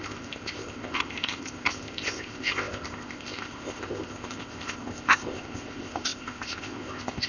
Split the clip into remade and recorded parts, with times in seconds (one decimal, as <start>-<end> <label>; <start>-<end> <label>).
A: 0.0-7.3 remade

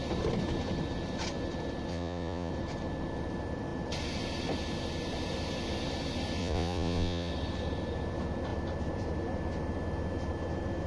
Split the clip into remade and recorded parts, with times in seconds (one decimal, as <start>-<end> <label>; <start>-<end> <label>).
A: 0.0-1.9 recorded; 1.9-2.5 remade; 2.5-6.4 recorded; 6.4-7.3 remade; 7.3-10.9 recorded